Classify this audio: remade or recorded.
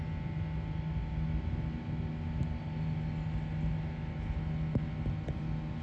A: recorded